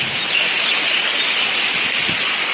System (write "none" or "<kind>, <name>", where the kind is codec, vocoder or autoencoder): none